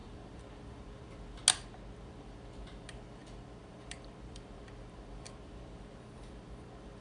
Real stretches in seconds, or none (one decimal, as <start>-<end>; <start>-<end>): 1.4-2.0